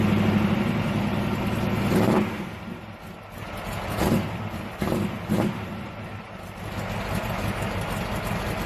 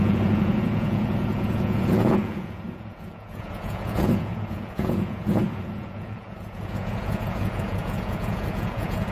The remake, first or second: second